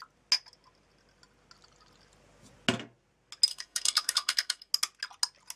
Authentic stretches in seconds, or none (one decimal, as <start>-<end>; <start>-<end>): 0.0-3.5; 4.7-5.6